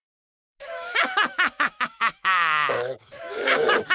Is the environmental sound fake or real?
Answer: fake